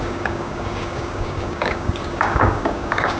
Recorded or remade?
remade